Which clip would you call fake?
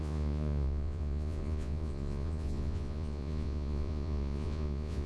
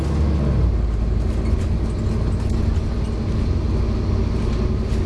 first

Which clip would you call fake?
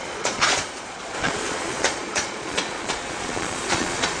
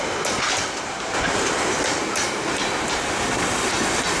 first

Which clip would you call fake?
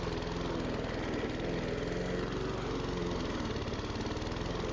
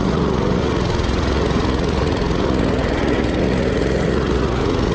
second